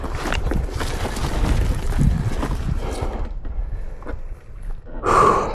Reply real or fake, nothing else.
real